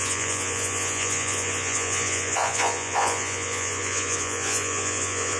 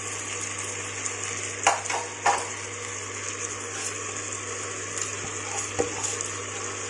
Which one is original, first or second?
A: second